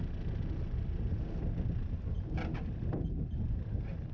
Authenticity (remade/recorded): recorded